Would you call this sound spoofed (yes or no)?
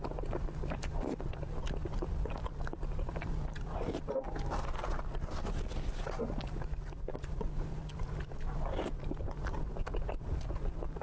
yes